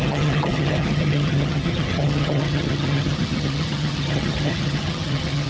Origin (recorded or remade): remade